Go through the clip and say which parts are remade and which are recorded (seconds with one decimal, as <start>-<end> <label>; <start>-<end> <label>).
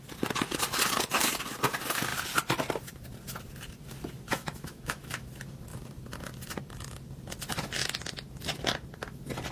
0.0-4.3 recorded; 4.3-5.2 remade; 5.2-9.5 recorded